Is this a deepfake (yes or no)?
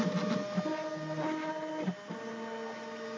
no